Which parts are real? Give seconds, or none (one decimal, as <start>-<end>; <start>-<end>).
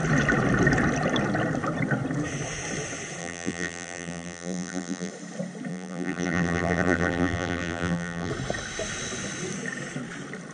0.0-3.2; 5.1-5.7; 8.3-10.5